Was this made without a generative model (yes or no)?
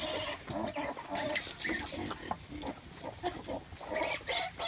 yes